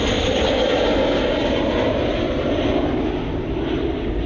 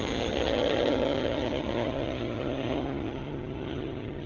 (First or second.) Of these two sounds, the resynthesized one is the second